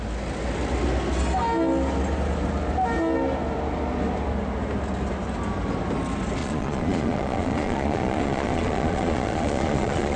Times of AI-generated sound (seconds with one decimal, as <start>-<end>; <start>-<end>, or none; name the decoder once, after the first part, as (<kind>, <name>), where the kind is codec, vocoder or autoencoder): 6.4-10.2 (vocoder, Vocos)